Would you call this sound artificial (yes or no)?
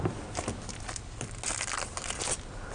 no